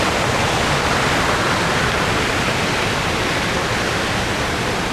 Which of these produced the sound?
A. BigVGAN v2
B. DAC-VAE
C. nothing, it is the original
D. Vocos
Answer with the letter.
C